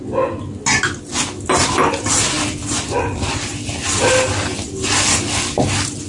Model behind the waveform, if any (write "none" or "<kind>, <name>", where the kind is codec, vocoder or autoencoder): none